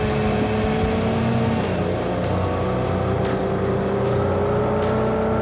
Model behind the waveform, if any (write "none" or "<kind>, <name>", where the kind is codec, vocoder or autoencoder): vocoder, BigVGAN v2